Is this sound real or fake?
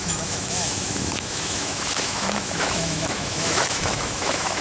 fake